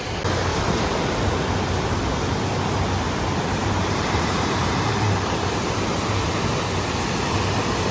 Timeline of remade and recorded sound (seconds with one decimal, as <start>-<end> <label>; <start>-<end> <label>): 0.0-0.5 recorded; 0.5-1.2 remade; 1.2-3.6 recorded; 3.6-6.3 remade; 6.3-7.9 recorded